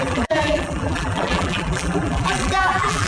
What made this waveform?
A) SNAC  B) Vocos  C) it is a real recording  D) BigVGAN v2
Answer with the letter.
D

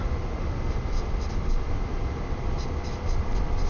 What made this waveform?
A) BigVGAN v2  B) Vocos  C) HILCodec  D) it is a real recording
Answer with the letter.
A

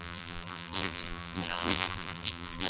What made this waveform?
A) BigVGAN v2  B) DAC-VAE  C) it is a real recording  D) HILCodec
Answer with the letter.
A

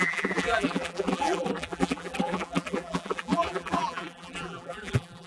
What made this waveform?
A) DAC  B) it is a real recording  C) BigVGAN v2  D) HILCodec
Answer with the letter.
C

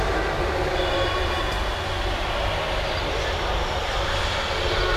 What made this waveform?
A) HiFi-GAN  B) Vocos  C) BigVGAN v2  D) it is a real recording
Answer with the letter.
D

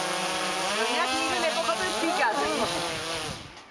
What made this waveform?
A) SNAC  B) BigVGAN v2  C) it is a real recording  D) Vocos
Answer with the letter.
C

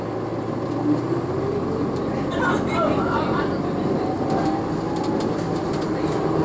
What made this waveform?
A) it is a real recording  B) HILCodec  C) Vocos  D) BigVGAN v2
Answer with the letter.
A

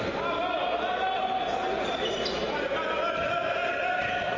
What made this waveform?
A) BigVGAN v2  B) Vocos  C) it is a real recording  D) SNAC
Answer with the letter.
C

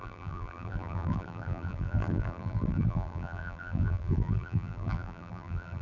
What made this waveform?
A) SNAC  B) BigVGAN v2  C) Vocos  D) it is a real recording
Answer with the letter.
B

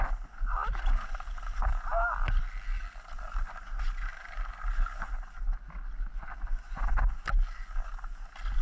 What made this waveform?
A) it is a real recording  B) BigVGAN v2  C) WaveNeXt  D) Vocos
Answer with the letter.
A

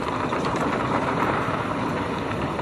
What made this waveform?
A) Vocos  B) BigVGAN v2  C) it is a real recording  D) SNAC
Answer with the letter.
B